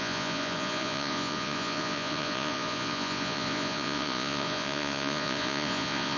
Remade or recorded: remade